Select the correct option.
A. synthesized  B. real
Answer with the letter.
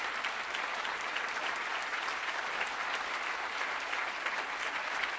A